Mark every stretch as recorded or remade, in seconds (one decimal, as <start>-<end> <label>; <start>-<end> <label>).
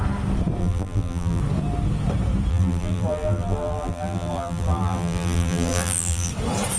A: 0.0-0.6 recorded; 0.6-1.4 remade; 1.4-2.5 recorded; 2.5-6.3 remade; 6.3-6.8 recorded